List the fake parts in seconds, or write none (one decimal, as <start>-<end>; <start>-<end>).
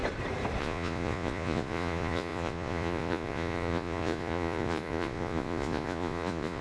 0.6-6.6